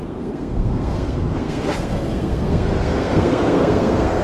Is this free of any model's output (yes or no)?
no